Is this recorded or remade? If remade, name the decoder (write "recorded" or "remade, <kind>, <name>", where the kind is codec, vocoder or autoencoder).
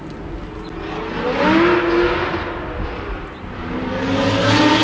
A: recorded